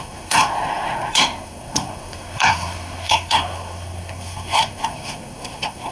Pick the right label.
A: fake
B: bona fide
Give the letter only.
A